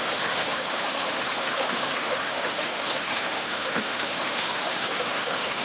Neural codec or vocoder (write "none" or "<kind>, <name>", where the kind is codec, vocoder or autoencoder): autoencoder, DAC-VAE